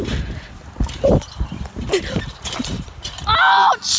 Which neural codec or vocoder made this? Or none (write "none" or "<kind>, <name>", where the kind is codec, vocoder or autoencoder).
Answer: none